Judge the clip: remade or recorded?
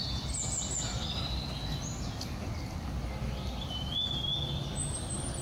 recorded